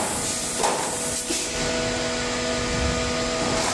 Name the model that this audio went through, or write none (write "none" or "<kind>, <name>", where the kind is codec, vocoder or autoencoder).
none